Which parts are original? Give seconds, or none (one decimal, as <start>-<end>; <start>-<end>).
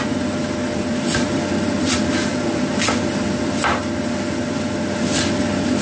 0.0-5.8